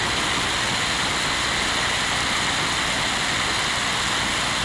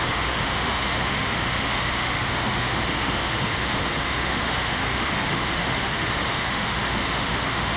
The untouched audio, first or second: first